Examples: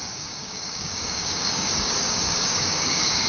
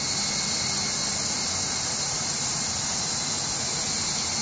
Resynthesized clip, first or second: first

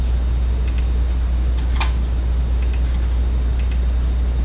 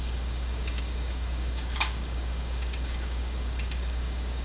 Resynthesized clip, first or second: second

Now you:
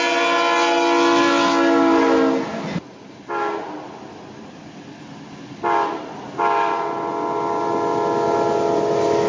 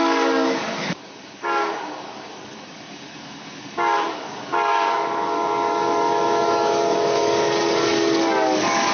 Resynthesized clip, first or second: second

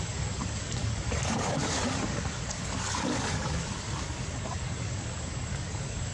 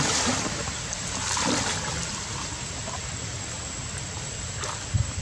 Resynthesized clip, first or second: first